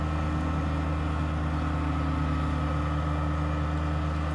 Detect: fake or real real